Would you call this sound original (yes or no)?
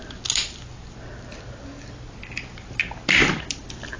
yes